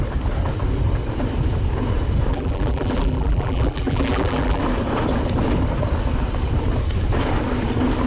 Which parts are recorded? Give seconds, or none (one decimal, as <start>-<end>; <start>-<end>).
0.0-2.3; 4.6-8.1